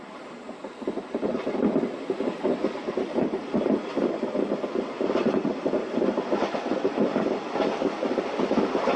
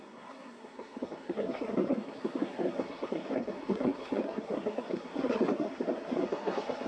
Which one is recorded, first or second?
first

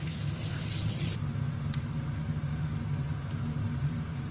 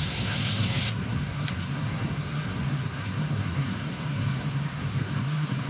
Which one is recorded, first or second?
first